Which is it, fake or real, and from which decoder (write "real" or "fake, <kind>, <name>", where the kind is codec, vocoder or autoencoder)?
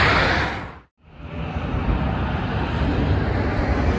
real